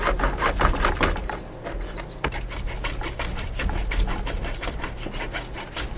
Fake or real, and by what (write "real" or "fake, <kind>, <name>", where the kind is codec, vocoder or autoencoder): real